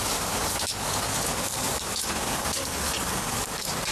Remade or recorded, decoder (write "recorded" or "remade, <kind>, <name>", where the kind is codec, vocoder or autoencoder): remade, codec, DAC